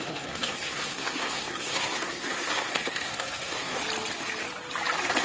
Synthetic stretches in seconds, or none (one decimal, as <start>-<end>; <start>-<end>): 0.0-3.8